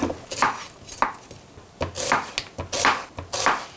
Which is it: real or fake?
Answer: real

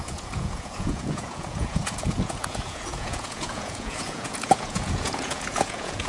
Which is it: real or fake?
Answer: fake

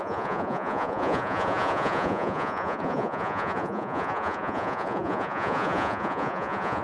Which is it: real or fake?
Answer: fake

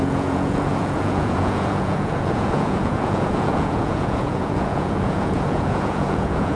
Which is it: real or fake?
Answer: fake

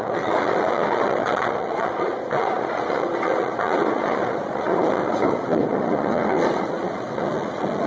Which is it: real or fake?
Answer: fake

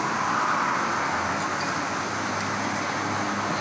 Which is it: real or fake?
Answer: real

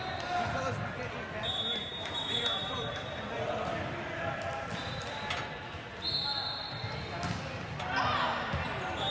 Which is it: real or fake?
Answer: real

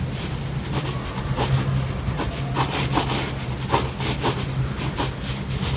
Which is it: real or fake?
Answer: real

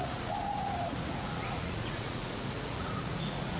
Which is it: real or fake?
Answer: fake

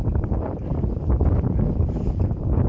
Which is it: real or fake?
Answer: real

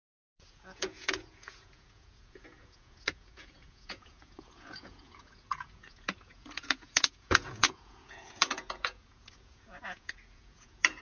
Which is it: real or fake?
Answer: fake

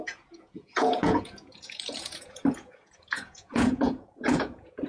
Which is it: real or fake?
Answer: fake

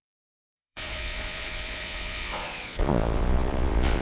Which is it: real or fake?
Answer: fake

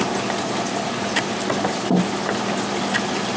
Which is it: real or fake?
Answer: real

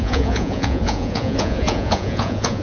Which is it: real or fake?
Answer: fake